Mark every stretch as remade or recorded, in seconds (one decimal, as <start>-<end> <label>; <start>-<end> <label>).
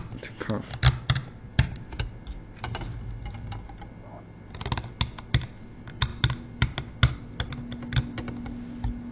0.0-9.1 recorded